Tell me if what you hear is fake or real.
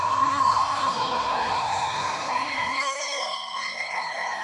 fake